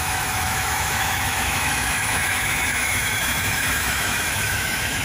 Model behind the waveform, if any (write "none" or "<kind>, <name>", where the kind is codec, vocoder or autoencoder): autoencoder, DAC-VAE